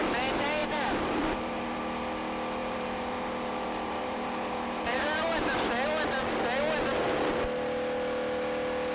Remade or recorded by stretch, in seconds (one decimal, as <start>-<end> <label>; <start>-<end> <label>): 0.0-0.6 recorded; 0.6-1.8 remade; 1.8-2.6 recorded; 2.6-5.7 remade; 5.7-8.9 recorded